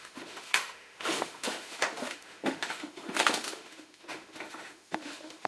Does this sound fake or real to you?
fake